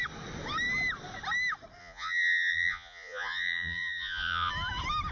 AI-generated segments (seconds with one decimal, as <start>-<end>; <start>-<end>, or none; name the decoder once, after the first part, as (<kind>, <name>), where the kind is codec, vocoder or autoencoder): 1.8-4.5 (vocoder, Vocos)